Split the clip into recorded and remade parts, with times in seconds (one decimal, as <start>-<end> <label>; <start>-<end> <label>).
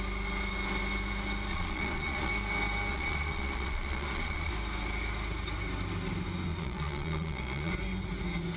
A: 0.0-1.5 recorded; 1.5-2.3 remade; 2.3-2.9 recorded; 2.9-4.5 remade; 4.5-6.5 recorded; 6.5-7.7 remade; 7.7-8.6 recorded